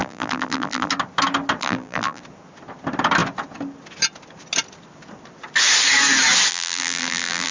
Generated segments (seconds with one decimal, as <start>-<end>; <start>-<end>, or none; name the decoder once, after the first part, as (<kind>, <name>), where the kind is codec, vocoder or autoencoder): 0.0-0.9 (vocoder, BigVGAN v2); 1.6-2.2; 6.5-7.5